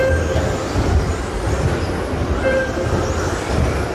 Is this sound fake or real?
real